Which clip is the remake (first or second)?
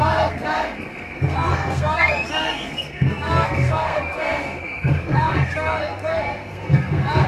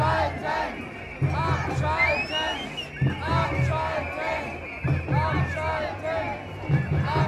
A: first